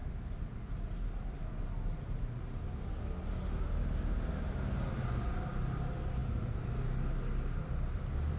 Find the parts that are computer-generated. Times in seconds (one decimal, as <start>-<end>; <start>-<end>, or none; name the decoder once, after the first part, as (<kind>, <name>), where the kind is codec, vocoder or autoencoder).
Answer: none